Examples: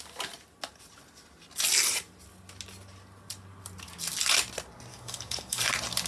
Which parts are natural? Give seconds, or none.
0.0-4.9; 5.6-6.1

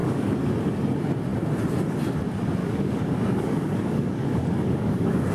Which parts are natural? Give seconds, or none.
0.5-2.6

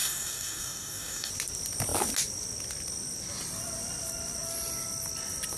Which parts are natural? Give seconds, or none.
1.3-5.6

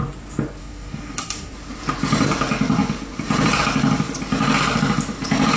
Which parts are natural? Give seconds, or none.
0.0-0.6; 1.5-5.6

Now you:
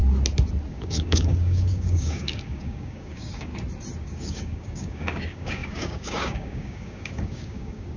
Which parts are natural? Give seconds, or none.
0.0-0.7; 3.5-4.0